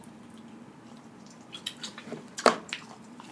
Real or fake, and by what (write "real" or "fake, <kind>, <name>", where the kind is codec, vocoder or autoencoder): fake, vocoder, BigVGAN v2